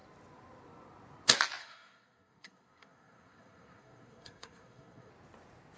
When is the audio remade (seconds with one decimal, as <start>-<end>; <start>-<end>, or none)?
1.6-5.1